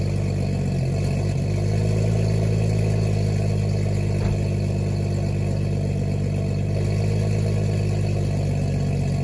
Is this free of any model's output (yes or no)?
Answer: yes